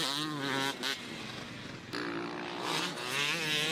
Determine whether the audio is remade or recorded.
recorded